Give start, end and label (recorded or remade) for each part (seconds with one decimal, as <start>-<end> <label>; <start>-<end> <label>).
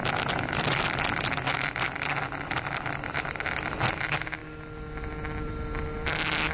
0.0-6.5 recorded